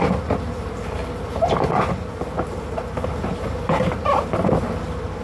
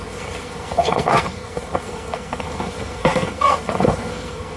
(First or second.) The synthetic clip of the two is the second